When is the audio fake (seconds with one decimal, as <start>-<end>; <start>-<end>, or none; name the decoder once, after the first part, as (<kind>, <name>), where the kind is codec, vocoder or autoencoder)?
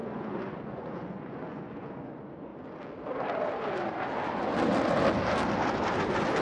0.0-2.5 (vocoder, Vocos)